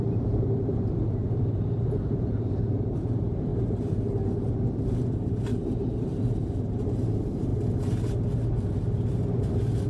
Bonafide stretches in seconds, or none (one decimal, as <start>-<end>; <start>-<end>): 3.5-4.7; 7.5-9.1